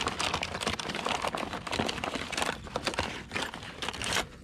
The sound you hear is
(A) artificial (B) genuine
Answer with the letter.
B